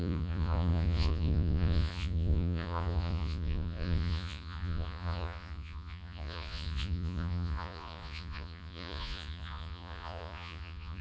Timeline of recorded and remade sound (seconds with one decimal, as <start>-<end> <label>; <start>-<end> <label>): 0.0-11.0 remade